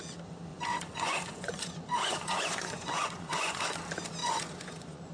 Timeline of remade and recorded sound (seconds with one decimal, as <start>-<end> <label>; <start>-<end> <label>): 0.0-0.5 recorded; 0.5-3.6 remade; 3.6-4.2 recorded; 4.2-5.1 remade